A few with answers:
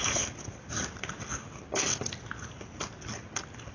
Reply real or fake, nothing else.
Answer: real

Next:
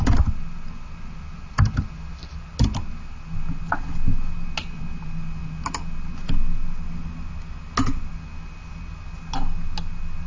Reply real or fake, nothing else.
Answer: real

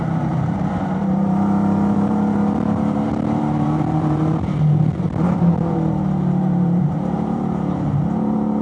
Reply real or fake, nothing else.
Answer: fake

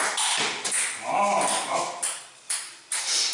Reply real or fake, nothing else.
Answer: real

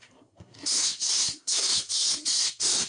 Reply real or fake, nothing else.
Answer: fake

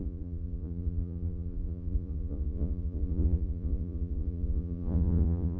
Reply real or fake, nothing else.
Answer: fake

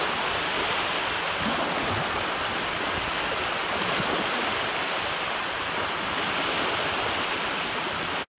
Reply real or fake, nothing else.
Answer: real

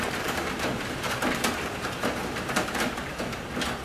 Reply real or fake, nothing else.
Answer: fake